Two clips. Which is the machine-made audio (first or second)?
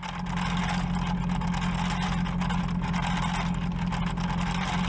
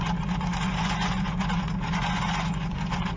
second